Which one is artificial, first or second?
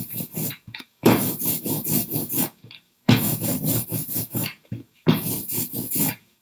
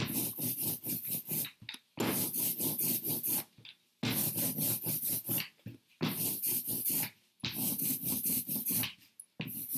first